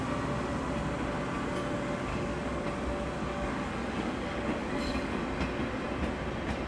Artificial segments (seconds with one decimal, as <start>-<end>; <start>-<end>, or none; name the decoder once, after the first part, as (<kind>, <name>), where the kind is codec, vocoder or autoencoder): 2.1-2.7 (codec, DAC); 3.2-5.2